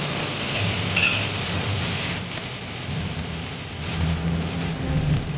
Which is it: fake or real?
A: real